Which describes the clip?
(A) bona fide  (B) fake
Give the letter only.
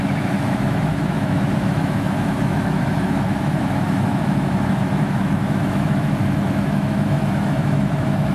B